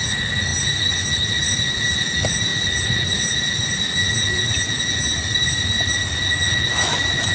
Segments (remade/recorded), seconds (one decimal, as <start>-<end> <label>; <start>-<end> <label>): 0.0-7.3 recorded